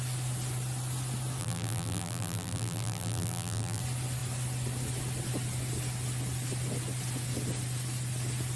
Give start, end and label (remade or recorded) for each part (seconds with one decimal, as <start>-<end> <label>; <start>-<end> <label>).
0.0-1.4 recorded; 1.4-3.8 remade; 3.8-8.6 recorded